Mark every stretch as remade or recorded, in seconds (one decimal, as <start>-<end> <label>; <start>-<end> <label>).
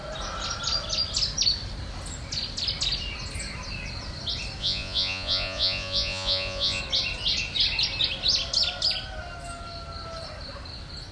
0.0-4.6 recorded; 4.6-6.8 remade; 6.8-11.1 recorded